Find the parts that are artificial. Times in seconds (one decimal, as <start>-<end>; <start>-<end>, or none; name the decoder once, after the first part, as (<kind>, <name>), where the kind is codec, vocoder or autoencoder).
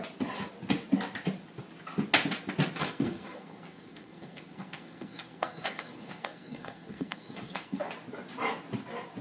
2.8-7.9 (codec, SNAC)